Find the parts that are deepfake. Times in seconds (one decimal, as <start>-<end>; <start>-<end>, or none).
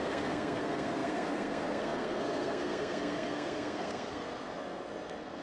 0.0-5.4